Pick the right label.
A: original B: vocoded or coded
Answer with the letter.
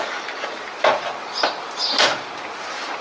A